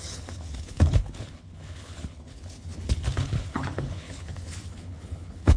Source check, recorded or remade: remade